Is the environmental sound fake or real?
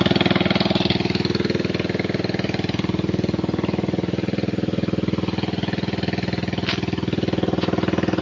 real